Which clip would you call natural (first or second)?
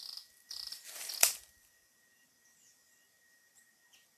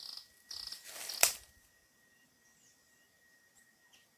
second